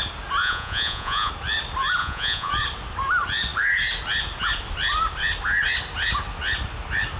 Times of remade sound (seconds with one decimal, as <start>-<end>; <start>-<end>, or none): 0.4-1.3; 2.0-2.5